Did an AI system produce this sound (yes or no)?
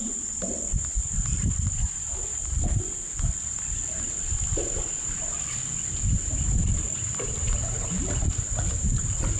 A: no